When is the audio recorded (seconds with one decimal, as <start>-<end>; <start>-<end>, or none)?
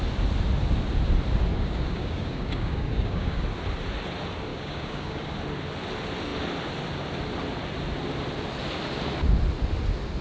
0.0-1.5; 3.4-4.5; 5.3-10.2